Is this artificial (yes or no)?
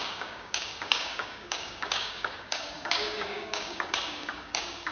yes